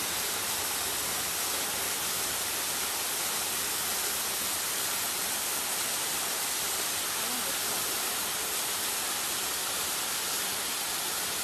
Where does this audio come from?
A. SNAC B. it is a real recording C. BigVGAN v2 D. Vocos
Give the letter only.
C